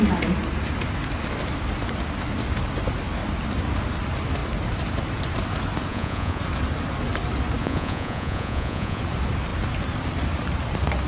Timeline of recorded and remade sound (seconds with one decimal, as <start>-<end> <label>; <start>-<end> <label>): 0.0-5.9 recorded; 5.9-6.4 remade; 6.4-7.6 recorded; 7.6-9.0 remade; 9.0-11.1 recorded